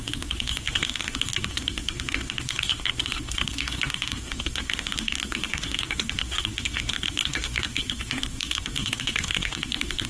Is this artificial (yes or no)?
yes